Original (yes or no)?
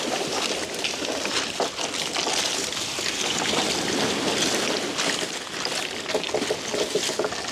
yes